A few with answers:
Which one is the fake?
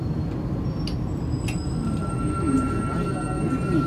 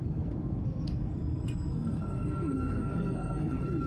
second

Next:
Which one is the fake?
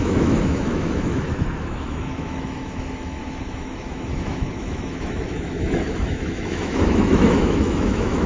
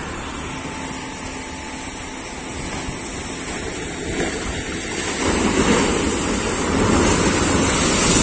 first